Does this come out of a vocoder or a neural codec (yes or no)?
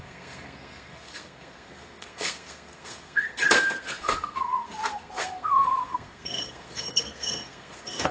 yes